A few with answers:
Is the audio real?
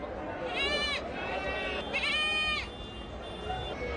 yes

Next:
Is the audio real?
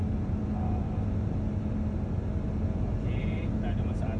yes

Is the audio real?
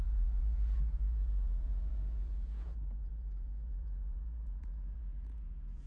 no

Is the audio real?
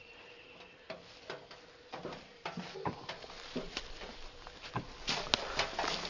yes